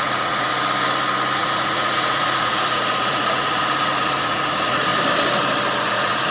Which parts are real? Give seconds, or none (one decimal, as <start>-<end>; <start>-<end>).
0.5-1.4; 4.9-5.8